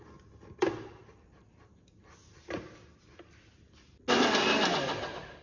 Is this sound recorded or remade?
recorded